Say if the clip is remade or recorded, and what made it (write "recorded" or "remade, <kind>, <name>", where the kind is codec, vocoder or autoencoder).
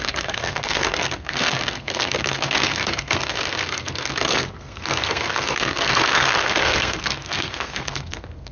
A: remade, codec, SNAC